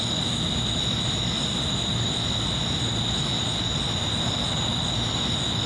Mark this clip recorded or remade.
recorded